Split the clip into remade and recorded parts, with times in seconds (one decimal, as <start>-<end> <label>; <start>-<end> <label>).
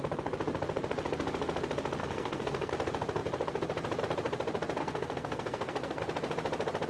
0.0-2.0 recorded; 2.0-2.7 remade; 2.7-4.8 recorded; 4.8-6.0 remade; 6.0-6.9 recorded